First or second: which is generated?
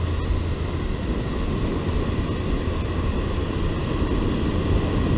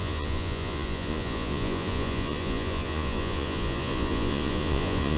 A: second